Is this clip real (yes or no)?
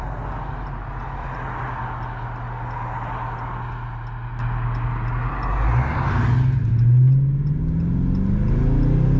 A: yes